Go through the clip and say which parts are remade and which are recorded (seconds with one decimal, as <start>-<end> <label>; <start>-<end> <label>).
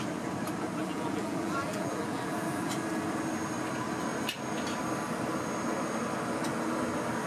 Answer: 0.0-0.8 recorded; 0.8-2.7 remade; 2.7-7.3 recorded